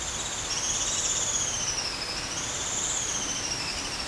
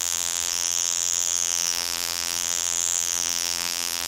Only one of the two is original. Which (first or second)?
first